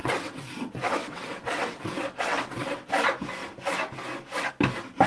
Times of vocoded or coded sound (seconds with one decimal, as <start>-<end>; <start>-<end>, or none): 0.0-2.9